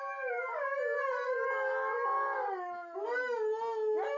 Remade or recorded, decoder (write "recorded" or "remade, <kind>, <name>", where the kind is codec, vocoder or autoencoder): recorded